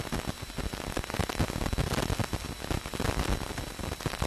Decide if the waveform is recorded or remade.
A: recorded